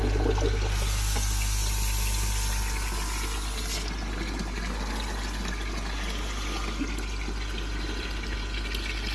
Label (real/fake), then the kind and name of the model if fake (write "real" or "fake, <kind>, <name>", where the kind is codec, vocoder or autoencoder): real